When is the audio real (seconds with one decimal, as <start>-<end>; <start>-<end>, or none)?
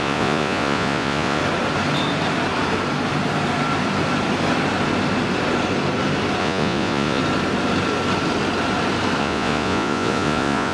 1.4-6.4; 7.2-9.2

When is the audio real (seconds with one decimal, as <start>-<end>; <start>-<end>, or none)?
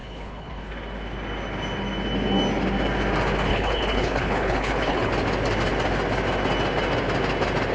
0.7-3.5; 5.1-7.7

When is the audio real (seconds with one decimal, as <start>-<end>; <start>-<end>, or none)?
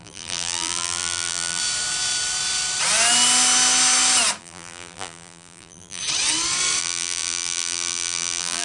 1.6-4.4; 6.0-6.8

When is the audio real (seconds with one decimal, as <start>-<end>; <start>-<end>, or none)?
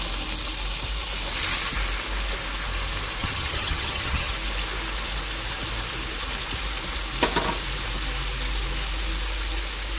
0.0-3.2; 4.3-10.0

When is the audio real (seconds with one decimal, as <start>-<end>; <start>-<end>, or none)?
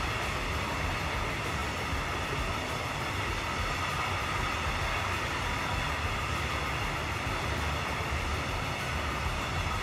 0.0-9.8